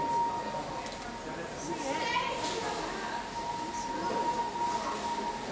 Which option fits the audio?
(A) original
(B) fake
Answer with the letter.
A